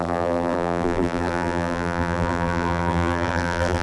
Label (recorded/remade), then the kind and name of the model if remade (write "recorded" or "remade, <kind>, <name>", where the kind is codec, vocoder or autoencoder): remade, vocoder, BigVGAN v2